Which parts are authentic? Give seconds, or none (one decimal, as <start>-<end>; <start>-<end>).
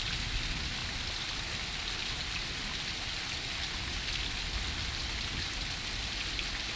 0.0-6.8